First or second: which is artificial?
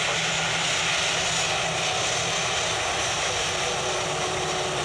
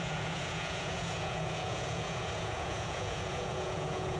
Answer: second